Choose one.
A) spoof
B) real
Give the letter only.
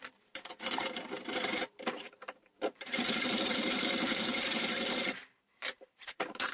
A